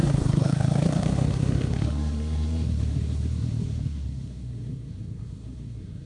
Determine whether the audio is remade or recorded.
remade